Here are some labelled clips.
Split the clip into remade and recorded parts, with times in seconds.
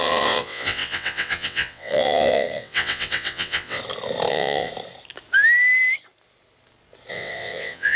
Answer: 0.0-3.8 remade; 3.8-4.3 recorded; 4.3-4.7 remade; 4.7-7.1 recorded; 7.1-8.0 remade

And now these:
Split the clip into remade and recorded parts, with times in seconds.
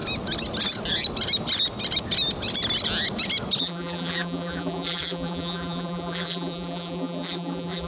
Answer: 0.0-3.6 recorded; 3.6-7.9 remade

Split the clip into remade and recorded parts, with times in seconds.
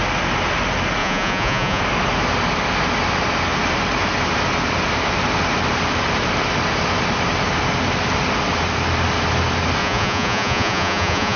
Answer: 0.0-1.0 recorded; 1.0-1.8 remade; 1.8-9.8 recorded; 9.8-11.4 remade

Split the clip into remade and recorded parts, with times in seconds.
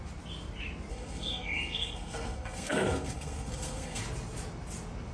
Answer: 0.0-0.9 recorded; 0.9-4.0 remade; 4.0-5.1 recorded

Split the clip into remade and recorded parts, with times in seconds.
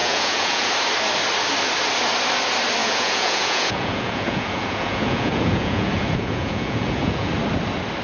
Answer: 0.0-0.7 remade; 0.7-2.8 recorded; 2.8-7.3 remade; 7.3-8.0 recorded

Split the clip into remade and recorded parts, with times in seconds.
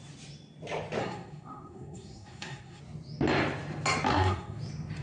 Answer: 0.0-1.0 recorded; 1.0-2.8 remade; 2.8-4.1 recorded; 4.1-4.6 remade; 4.6-5.0 recorded